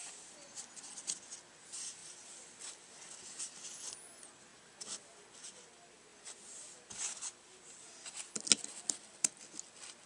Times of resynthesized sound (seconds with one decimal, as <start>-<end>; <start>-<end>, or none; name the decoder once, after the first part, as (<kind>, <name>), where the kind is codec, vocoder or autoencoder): 2.0-3.5 (vocoder, BigVGAN v2); 4.5-5.6